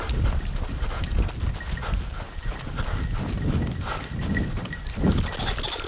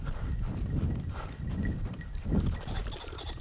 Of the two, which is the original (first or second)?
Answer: first